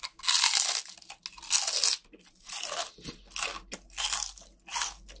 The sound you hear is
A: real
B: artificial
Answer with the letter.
A